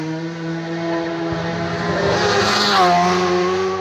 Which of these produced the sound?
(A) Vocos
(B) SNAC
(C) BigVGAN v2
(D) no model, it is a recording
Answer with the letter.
D